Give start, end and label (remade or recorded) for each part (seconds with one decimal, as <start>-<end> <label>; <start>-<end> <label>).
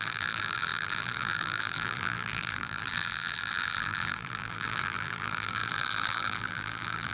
0.0-7.1 remade